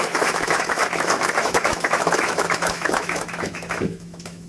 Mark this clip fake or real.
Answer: fake